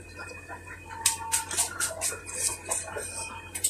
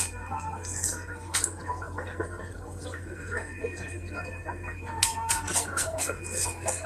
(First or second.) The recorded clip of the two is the first